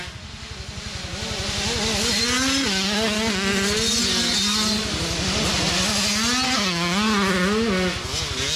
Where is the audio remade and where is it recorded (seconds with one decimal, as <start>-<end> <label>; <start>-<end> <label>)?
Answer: 0.0-8.6 recorded